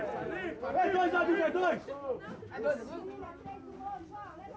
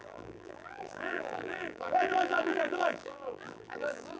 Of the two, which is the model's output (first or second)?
second